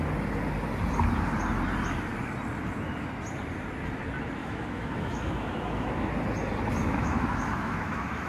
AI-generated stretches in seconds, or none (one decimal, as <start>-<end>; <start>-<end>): 4.4-6.1; 6.8-8.3